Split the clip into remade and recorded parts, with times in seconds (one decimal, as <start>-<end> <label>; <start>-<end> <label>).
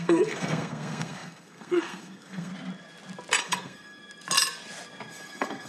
0.0-2.5 remade; 2.5-3.4 recorded; 3.4-4.0 remade; 4.0-5.1 recorded; 5.1-5.7 remade